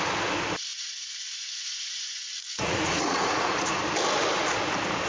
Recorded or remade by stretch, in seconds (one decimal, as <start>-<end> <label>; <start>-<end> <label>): 0.0-0.7 recorded; 0.7-3.8 remade; 3.8-5.1 recorded